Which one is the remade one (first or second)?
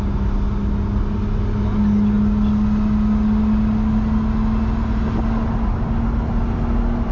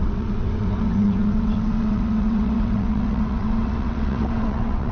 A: second